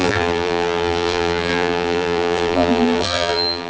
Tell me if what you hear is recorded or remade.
remade